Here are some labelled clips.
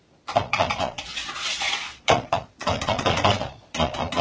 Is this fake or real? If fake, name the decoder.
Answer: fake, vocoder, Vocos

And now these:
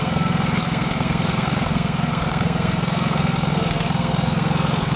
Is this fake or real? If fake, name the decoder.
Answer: fake, codec, SNAC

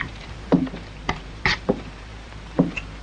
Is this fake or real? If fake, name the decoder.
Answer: fake, vocoder, BigVGAN v2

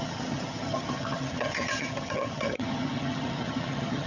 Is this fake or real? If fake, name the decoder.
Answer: fake, vocoder, HiFi-GAN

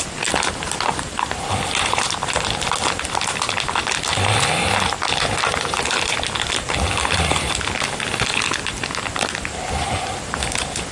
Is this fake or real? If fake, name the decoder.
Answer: real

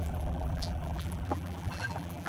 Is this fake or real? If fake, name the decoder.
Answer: fake, vocoder, BigVGAN v2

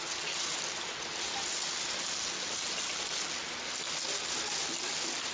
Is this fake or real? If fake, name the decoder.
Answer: real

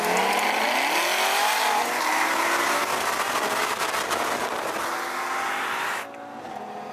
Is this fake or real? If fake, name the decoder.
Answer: real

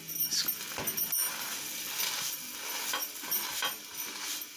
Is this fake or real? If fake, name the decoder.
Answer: real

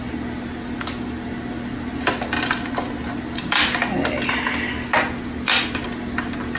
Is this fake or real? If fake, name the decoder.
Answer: real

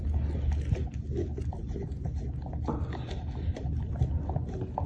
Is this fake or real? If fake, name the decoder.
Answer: real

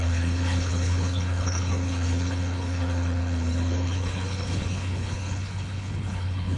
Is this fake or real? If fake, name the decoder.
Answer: fake, codec, HILCodec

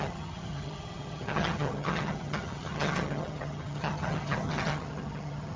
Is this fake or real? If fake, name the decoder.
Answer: fake, vocoder, HiFi-GAN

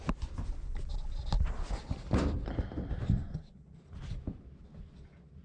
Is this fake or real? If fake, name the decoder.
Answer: real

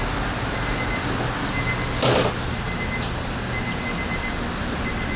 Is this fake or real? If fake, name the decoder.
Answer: real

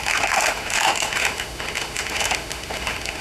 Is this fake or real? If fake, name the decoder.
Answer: fake, autoencoder, DAC-VAE